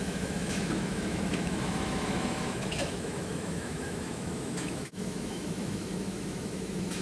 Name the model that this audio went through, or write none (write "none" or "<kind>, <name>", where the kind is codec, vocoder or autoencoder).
autoencoder, DAC-VAE